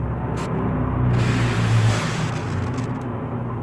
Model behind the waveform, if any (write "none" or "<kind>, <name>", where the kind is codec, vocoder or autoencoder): none